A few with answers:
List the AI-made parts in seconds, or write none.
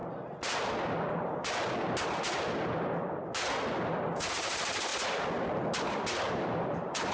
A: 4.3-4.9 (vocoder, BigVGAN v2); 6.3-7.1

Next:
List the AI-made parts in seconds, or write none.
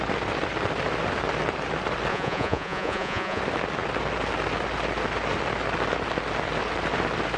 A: 2.1-3.4 (vocoder, Vocos)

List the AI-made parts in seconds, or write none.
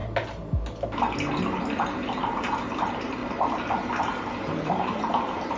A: 1.8-3.2 (vocoder, BigVGAN v2); 4.0-5.6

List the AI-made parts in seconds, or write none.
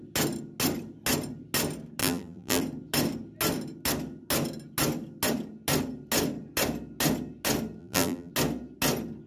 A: 2.0-2.6 (vocoder, BigVGAN v2); 7.8-8.3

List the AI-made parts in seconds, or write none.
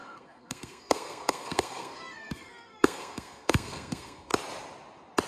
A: 0.0-4.3 (codec, SNAC)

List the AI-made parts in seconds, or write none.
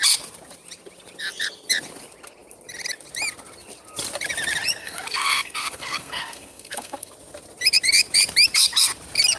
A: 4.8-7.1 (codec, SNAC)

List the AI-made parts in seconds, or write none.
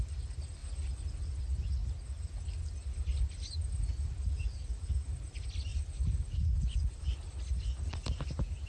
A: 5.7-7.0 (vocoder, BigVGAN v2)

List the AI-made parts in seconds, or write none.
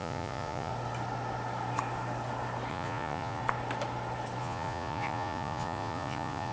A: 0.0-0.7 (vocoder, Vocos); 2.7-3.4; 4.4-6.5